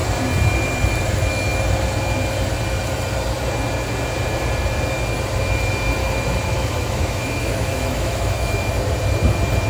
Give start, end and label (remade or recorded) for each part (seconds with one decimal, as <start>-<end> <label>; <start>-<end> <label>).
0.0-6.0 recorded; 6.0-8.7 remade; 8.7-9.7 recorded